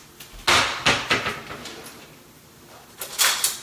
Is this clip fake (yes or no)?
no